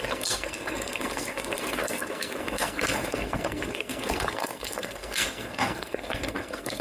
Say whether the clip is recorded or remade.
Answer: remade